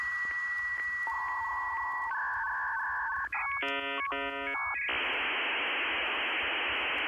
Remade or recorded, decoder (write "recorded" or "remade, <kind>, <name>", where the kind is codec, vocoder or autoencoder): recorded